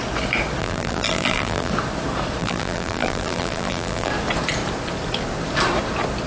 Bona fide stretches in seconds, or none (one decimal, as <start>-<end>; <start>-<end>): 0.0-0.6; 1.7-2.4; 4.1-6.3